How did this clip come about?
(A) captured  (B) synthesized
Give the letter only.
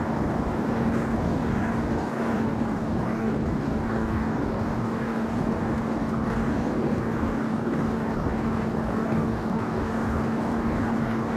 B